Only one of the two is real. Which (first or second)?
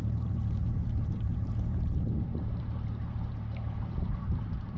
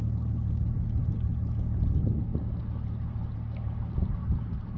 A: second